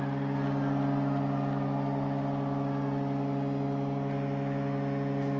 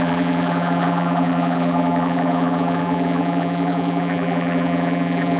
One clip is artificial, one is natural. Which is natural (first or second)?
first